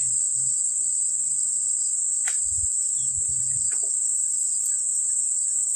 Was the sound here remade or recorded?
recorded